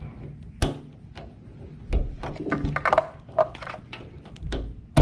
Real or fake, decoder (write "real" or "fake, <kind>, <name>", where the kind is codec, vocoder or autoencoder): real